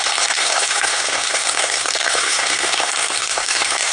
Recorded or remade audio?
remade